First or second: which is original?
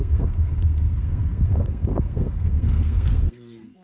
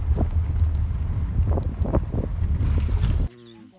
second